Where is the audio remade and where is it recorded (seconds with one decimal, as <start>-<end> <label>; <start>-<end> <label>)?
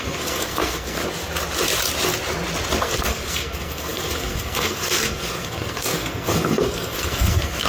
0.0-1.0 remade; 1.0-2.8 recorded; 2.8-7.7 remade